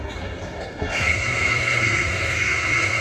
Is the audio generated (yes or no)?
yes